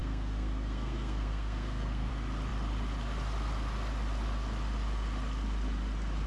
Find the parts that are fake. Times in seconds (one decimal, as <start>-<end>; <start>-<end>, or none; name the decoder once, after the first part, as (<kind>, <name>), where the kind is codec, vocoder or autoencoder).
0.0-2.1 (codec, SNAC)